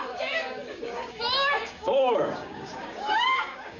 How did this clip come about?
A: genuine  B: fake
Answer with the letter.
B